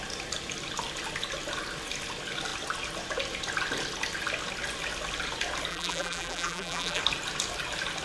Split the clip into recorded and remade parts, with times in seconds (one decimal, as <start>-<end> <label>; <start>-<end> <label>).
0.0-5.7 recorded; 5.7-7.0 remade; 7.0-8.0 recorded